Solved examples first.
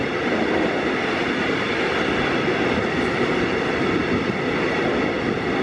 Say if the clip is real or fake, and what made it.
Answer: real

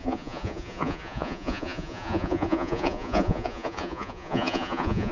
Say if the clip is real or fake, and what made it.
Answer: fake, vocoder, Vocos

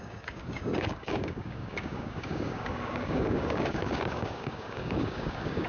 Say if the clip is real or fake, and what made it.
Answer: fake, codec, DAC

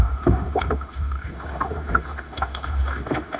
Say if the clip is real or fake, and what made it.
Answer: fake, autoencoder, DAC-VAE